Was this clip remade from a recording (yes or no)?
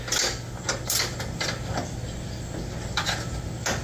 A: no